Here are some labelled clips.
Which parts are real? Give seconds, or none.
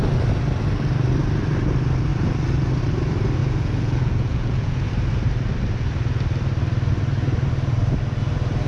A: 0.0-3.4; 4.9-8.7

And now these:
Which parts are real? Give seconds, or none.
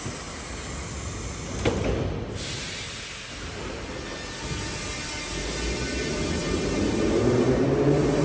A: 0.0-8.2